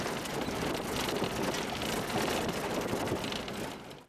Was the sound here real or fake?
real